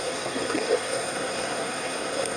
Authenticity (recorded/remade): remade